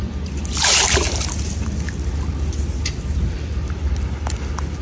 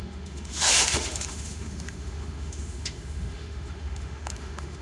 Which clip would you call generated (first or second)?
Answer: second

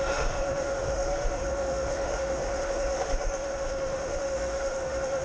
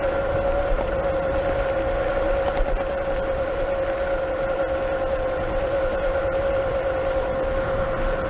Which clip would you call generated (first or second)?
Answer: first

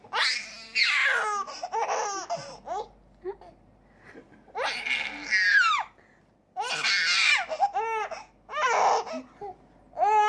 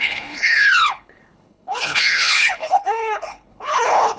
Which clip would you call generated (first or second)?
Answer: second